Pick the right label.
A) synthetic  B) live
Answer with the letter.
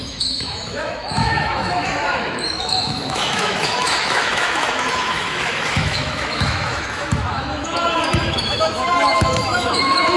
A